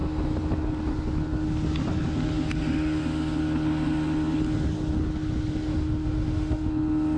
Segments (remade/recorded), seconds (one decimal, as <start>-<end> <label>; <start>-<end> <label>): 0.0-5.7 recorded; 5.7-6.7 remade; 6.7-7.2 recorded